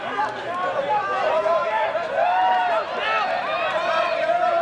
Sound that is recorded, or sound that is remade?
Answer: remade